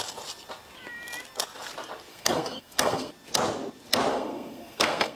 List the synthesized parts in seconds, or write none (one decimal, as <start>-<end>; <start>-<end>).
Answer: 2.1-3.1; 4.1-5.2